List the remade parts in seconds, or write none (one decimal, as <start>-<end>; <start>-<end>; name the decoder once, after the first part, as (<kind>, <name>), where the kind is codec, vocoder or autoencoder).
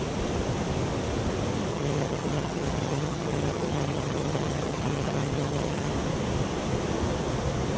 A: 1.7-5.9 (vocoder, HiFi-GAN)